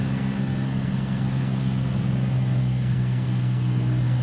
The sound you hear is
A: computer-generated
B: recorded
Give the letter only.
A